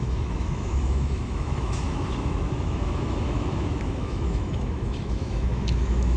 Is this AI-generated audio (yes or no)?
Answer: yes